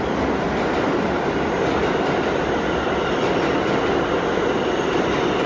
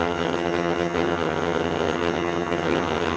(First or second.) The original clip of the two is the first